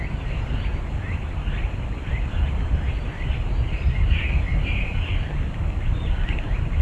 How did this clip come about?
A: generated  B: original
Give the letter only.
B